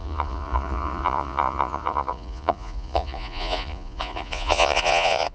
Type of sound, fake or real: fake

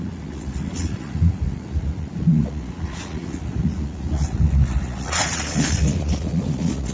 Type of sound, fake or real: fake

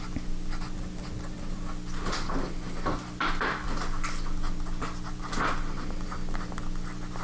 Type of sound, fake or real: real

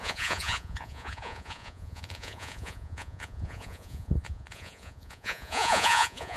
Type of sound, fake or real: fake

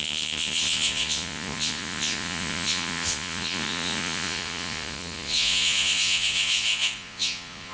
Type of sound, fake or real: fake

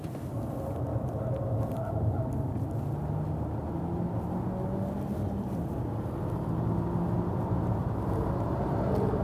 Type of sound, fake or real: real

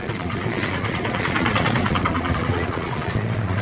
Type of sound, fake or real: fake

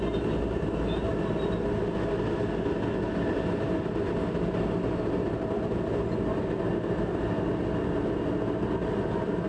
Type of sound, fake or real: real